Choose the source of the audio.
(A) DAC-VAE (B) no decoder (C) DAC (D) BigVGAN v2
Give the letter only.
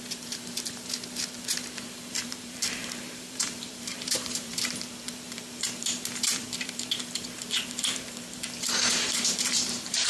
D